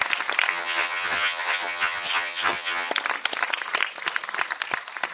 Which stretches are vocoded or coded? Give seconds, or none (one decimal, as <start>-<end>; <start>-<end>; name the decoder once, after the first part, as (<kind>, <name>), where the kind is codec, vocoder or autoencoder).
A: 0.5-2.9 (vocoder, HiFi-GAN)